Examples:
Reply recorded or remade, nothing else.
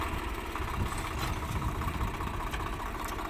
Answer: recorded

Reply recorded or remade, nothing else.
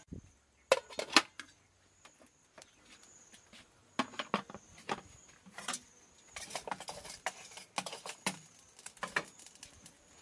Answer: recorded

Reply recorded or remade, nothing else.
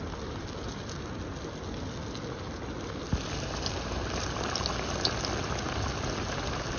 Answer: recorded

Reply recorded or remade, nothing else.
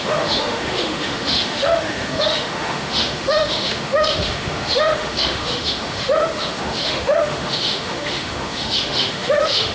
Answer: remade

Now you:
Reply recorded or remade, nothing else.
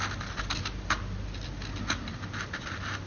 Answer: recorded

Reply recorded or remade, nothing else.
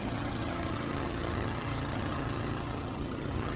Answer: remade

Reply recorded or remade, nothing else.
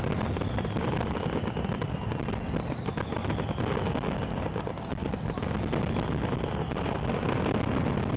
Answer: recorded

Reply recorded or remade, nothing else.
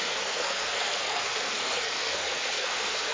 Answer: remade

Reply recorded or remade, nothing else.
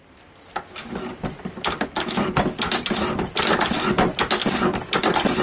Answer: recorded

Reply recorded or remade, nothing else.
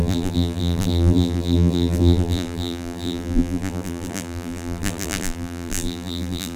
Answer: remade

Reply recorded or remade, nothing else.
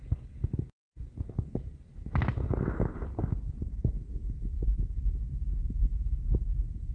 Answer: recorded